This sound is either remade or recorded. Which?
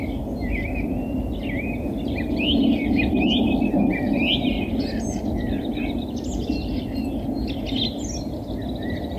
recorded